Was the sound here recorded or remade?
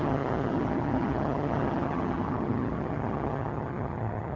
remade